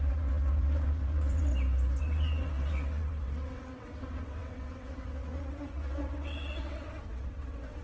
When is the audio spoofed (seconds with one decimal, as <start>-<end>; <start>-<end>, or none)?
0.0-1.5; 2.0-7.8